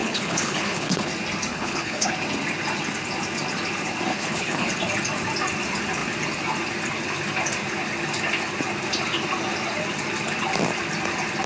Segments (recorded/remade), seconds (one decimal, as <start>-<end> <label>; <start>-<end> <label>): 0.0-1.1 remade; 1.1-1.5 recorded; 1.5-2.1 remade; 2.1-4.1 recorded; 4.1-4.7 remade; 4.7-11.5 recorded